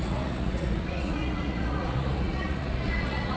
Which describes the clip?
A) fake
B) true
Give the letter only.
A